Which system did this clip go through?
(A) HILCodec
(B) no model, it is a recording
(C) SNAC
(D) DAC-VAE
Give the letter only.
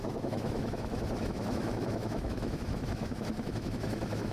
D